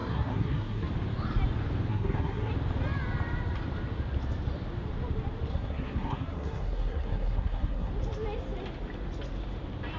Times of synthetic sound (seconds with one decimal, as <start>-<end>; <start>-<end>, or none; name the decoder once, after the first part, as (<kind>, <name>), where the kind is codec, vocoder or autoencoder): 0.0-0.9 (codec, SNAC); 1.9-2.5; 5.5-7.9